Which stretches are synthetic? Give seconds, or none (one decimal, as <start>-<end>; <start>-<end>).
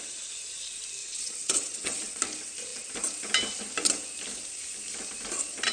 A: 1.0-2.2